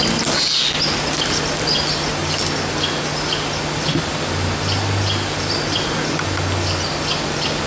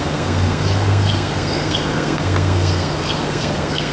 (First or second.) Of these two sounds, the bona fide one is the first